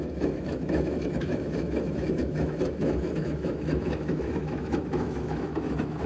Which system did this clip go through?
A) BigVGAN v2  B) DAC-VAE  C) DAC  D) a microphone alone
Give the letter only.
B